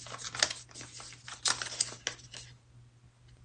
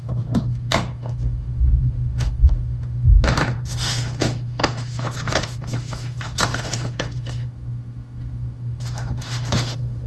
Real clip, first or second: first